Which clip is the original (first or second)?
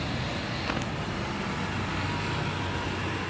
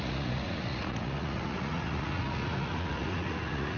first